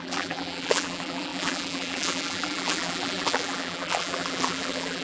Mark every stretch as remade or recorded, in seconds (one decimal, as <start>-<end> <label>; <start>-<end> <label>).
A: 0.0-5.0 remade

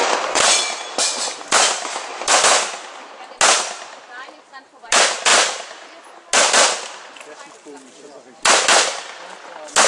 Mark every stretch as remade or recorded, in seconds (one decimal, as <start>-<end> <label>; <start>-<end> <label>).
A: 0.0-2.3 remade; 2.3-9.9 recorded

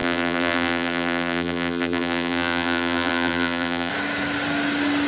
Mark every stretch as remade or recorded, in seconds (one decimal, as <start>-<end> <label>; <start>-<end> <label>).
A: 0.0-3.9 remade; 3.9-5.1 recorded

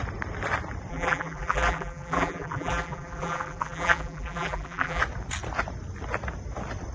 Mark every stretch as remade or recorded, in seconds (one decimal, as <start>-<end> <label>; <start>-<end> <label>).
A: 0.0-0.9 recorded; 0.9-5.0 remade; 5.0-6.9 recorded

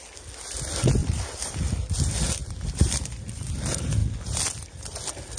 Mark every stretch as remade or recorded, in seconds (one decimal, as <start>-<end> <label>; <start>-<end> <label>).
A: 0.0-1.0 recorded; 1.0-2.0 remade; 2.0-2.4 recorded; 2.4-3.6 remade; 3.6-5.4 recorded

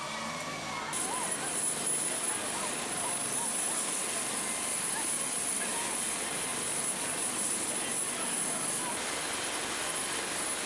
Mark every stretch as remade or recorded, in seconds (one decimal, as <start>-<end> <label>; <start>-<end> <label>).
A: 0.0-10.7 recorded

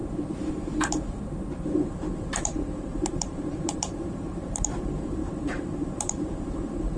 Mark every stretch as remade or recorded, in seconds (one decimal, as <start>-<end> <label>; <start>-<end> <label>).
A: 0.0-7.0 remade

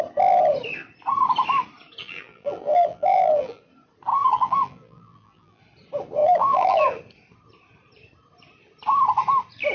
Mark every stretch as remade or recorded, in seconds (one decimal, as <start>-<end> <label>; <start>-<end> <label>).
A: 0.0-2.0 recorded; 2.0-3.6 remade; 3.6-4.1 recorded; 4.1-5.6 remade; 5.6-6.2 recorded; 6.2-6.8 remade; 6.8-9.7 recorded